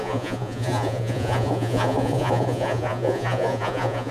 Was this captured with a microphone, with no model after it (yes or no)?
no